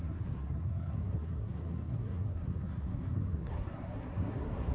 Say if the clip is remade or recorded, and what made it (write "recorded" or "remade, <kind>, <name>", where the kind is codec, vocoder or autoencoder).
remade, codec, SNAC